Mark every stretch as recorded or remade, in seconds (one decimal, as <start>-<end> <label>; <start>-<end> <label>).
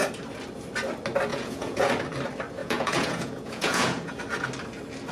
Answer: 0.0-1.3 recorded; 1.3-1.9 remade; 1.9-2.6 recorded; 2.6-4.2 remade; 4.2-5.1 recorded